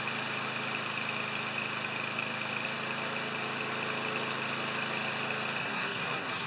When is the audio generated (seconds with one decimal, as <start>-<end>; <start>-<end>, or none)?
5.6-6.5